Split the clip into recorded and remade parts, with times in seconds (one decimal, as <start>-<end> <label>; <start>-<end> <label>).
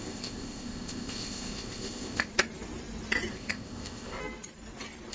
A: 0.0-2.3 remade; 2.3-3.3 recorded; 3.3-4.2 remade; 4.2-5.1 recorded